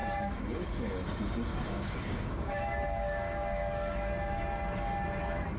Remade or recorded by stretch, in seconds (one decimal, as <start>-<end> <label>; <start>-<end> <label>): 0.0-1.0 remade; 1.0-1.5 recorded; 1.5-4.1 remade; 4.1-5.6 recorded